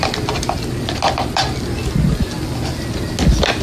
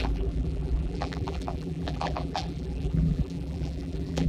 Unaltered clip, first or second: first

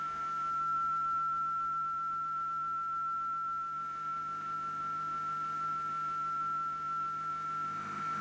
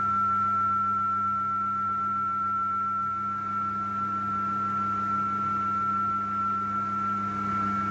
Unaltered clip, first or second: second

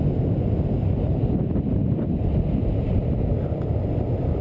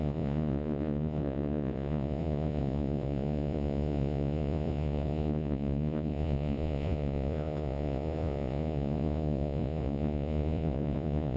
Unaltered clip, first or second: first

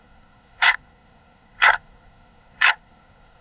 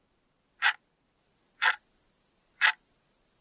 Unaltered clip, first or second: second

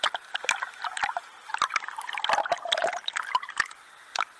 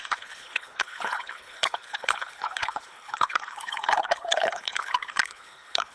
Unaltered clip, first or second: first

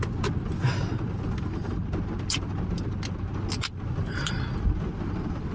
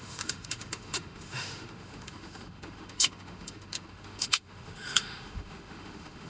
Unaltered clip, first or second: first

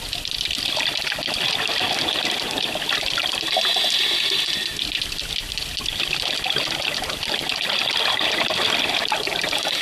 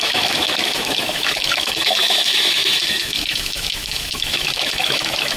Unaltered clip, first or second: first